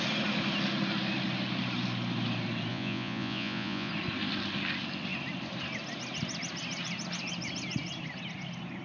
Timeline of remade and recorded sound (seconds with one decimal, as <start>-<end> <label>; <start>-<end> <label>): 0.0-2.7 recorded; 2.7-3.9 remade; 3.9-8.8 recorded